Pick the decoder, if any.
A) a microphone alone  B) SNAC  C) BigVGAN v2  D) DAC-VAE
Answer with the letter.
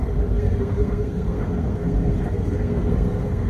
B